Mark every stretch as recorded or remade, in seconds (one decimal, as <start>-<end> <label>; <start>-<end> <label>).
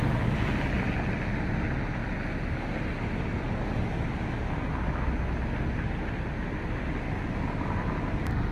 0.0-8.5 recorded